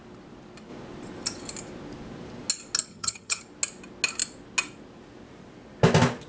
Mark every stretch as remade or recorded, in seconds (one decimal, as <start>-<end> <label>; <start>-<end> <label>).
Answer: 0.0-2.9 recorded; 2.9-3.4 remade; 3.4-6.3 recorded

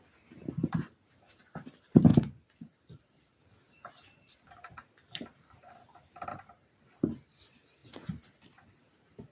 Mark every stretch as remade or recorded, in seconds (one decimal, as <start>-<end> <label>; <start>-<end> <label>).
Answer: 0.0-2.1 remade; 2.1-3.0 recorded; 3.0-4.7 remade; 4.7-5.6 recorded; 5.6-9.3 remade

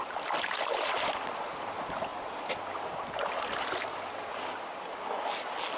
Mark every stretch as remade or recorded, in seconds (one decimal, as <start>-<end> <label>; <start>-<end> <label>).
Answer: 0.0-5.8 recorded

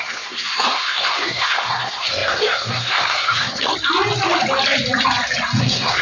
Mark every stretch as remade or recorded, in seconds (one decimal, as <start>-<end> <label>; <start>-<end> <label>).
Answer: 0.0-3.7 remade; 3.7-5.6 recorded; 5.6-6.0 remade

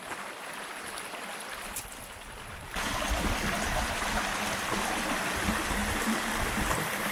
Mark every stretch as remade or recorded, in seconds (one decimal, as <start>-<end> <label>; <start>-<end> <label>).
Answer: 0.0-5.8 recorded; 5.8-6.3 remade; 6.3-7.1 recorded

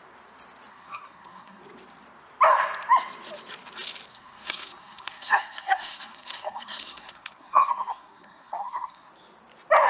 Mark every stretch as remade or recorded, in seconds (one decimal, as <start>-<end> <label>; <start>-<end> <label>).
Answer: 0.0-0.7 recorded; 0.7-1.6 remade; 1.6-4.1 recorded; 4.1-9.1 remade; 9.1-9.9 recorded